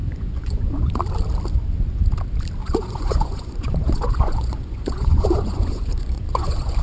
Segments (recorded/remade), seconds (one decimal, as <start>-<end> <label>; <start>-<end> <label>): 0.0-0.9 remade; 0.9-2.6 recorded; 2.6-6.8 remade